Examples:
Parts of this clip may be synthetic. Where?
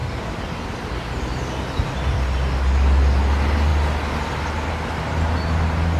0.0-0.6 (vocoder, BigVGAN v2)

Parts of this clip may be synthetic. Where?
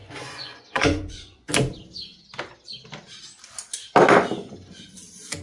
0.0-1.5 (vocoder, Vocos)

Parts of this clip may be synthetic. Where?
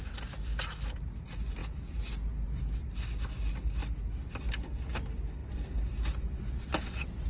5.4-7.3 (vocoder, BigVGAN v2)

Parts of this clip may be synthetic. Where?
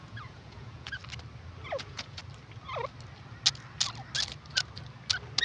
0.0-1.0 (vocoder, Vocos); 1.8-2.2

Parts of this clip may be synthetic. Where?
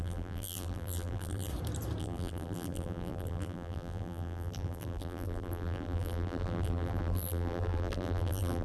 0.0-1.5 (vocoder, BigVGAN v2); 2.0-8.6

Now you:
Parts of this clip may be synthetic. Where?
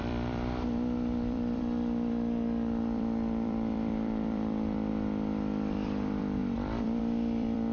0.0-4.9 (vocoder, BigVGAN v2); 5.7-7.7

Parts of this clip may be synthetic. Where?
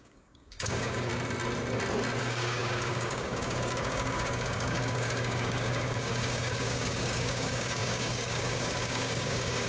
0.0-1.1 (codec, DAC); 2.2-9.7